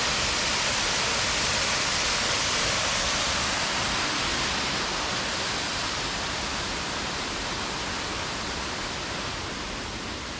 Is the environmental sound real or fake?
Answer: real